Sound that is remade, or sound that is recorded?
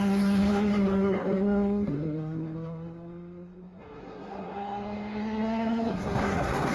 remade